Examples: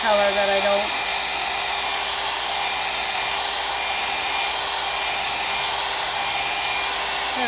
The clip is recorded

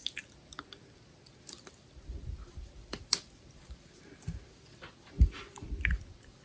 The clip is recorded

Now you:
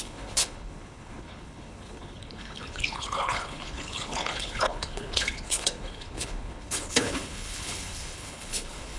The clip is remade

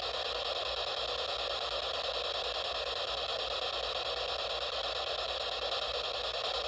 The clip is recorded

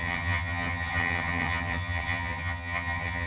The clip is remade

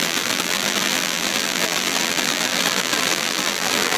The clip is remade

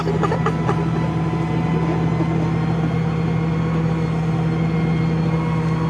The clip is recorded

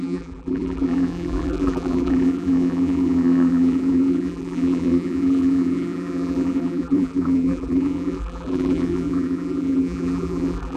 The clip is remade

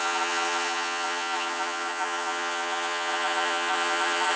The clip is remade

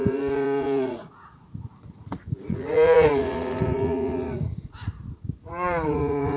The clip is remade